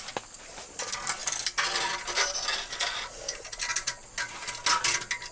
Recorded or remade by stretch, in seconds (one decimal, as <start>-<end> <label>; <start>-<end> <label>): 0.0-5.3 recorded